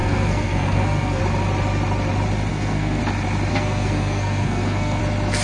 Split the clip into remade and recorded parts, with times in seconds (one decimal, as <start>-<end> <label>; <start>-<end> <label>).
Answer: 0.0-1.2 remade; 1.2-2.5 recorded; 2.5-3.0 remade; 3.0-3.5 recorded; 3.5-5.0 remade; 5.0-5.4 recorded